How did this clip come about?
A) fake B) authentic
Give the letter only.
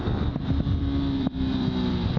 A